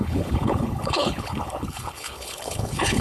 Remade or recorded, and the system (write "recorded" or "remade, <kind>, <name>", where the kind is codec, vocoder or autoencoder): remade, codec, HILCodec